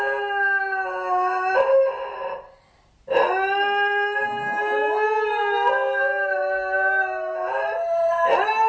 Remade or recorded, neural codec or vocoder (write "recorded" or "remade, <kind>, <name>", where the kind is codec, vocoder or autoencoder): recorded